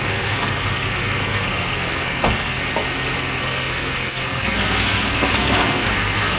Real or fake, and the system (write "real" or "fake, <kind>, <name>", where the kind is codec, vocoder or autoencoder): fake, codec, SNAC